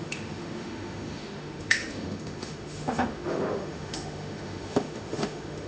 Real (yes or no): no